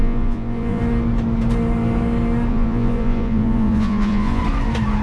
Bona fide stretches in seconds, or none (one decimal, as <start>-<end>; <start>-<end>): 0.8-2.5; 4.4-5.0